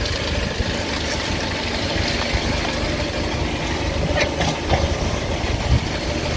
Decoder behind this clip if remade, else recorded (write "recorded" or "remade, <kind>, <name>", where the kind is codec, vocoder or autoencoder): recorded